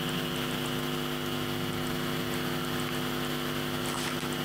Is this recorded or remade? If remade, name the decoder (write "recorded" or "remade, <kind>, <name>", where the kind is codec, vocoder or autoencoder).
recorded